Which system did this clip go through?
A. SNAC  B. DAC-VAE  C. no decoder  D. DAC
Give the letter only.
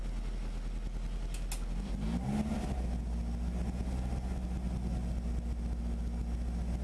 C